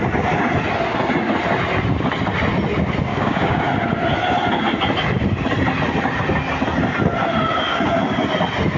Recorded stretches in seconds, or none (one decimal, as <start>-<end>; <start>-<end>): 0.0-3.1; 3.6-8.8